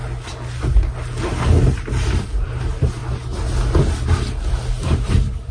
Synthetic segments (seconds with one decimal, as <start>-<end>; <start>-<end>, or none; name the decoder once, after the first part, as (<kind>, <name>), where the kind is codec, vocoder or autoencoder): 1.6-3.0 (vocoder, BigVGAN v2); 4.7-5.5